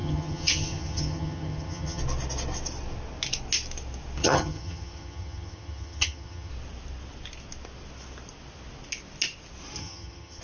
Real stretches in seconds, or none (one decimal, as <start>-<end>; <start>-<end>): 2.0-4.2; 6.5-9.8